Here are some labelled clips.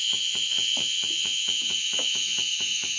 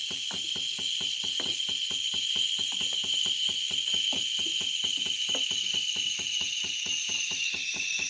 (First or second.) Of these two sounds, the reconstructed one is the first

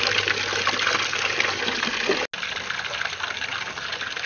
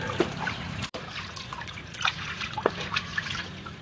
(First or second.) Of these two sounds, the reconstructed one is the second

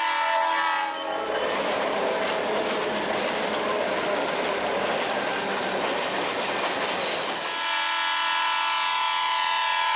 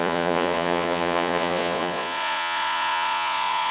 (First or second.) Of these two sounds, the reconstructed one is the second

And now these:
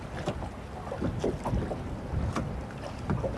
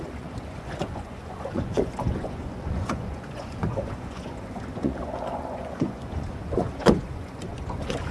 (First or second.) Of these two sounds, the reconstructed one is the second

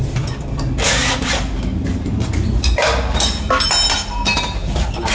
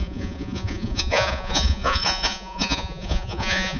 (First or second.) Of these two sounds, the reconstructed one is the second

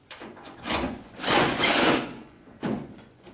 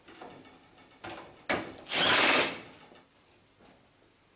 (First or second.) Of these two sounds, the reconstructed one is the first